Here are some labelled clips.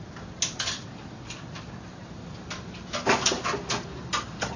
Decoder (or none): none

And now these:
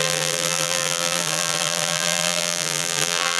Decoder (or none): vocoder, BigVGAN v2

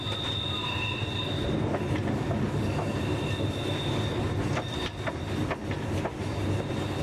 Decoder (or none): none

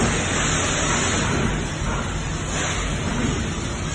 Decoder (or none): none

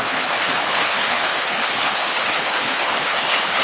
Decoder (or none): codec, HILCodec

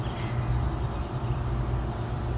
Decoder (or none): none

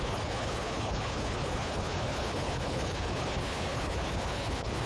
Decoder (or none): codec, HILCodec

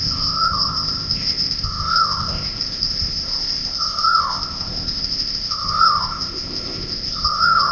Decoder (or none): codec, ZipCodec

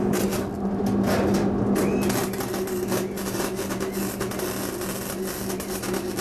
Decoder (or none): none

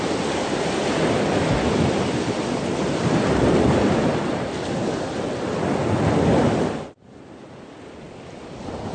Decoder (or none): none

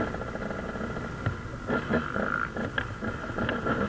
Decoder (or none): none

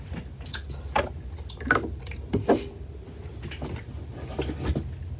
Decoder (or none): none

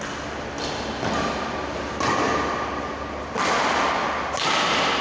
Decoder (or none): none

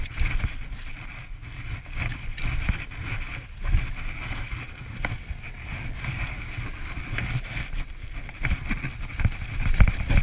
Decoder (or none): none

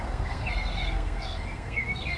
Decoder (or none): codec, SNAC